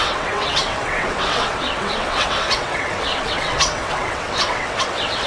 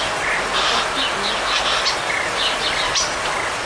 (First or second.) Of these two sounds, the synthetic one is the first